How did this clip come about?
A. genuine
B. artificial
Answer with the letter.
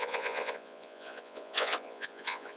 B